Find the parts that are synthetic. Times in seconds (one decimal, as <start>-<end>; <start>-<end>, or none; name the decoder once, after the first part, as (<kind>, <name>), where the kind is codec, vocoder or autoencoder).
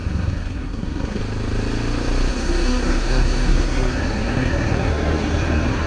0.0-1.2 (codec, SNAC); 2.3-5.9